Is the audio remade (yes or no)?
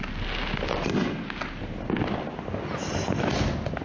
no